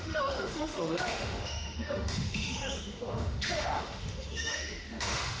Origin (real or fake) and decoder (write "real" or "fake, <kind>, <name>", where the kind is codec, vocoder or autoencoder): fake, autoencoder, DAC-VAE